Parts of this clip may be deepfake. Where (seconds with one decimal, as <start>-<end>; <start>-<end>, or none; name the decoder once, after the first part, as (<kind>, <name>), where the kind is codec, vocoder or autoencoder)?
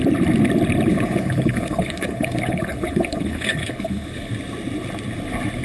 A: 0.9-4.3 (codec, HILCodec)